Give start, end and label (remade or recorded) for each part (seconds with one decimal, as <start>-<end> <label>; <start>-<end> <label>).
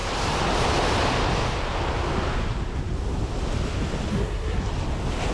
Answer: 0.0-4.1 recorded; 4.1-4.7 remade; 4.7-5.3 recorded